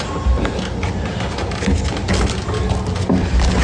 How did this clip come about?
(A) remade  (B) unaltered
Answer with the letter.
B